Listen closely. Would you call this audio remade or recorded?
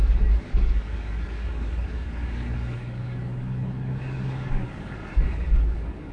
remade